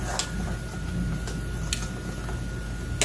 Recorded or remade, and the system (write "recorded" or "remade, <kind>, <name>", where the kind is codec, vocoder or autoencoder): recorded